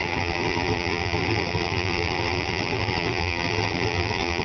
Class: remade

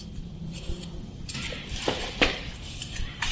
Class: remade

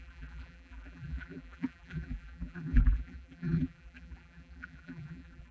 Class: remade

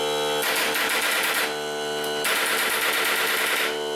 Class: recorded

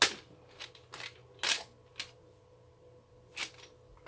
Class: recorded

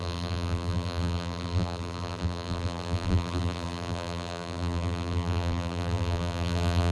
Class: remade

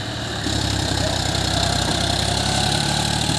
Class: remade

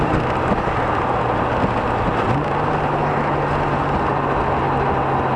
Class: recorded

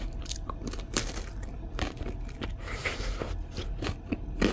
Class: remade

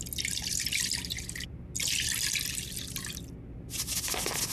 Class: recorded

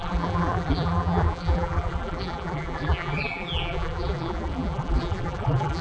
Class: remade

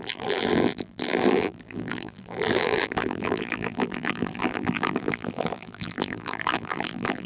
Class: remade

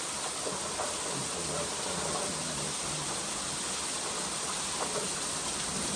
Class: recorded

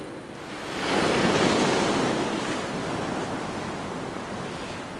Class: recorded